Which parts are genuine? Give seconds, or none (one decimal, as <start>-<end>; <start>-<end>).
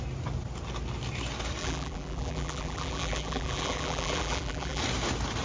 0.0-1.6; 4.8-5.4